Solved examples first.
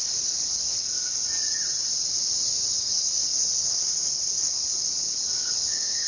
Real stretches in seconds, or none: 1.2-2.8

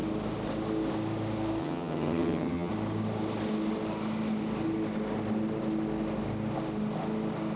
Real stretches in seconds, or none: 0.0-1.6; 2.7-7.6

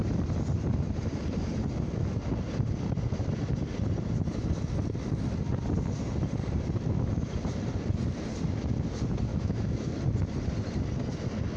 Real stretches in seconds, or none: 0.0-9.3; 9.9-11.6

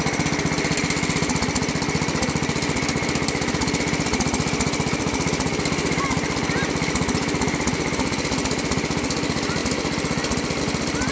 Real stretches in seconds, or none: 0.0-11.1

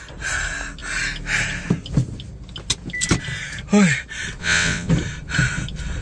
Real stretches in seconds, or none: 0.0-4.4; 4.9-6.0

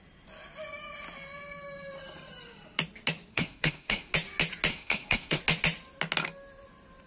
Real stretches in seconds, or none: 0.0-3.3; 4.1-4.7; 5.4-7.1

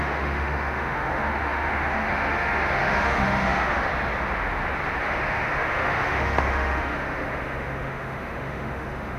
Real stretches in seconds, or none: 3.9-5.0